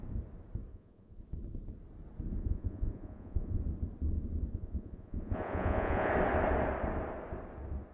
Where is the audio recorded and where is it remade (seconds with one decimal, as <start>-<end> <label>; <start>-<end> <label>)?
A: 0.0-0.7 recorded; 0.7-1.2 remade; 1.2-2.4 recorded; 2.4-3.6 remade; 3.6-4.5 recorded; 4.5-6.1 remade; 6.1-7.9 recorded